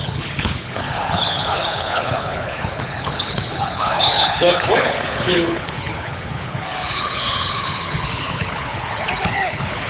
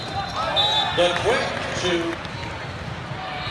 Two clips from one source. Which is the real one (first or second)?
second